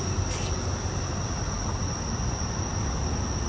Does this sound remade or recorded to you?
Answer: recorded